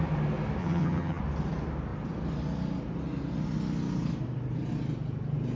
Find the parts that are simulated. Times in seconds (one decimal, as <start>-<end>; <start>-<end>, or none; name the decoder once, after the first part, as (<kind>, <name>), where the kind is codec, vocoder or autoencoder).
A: 0.6-1.2 (vocoder, HiFi-GAN)